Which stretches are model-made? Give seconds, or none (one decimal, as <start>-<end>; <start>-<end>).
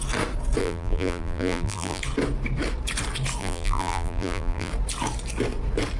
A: 0.6-2.0; 3.4-4.7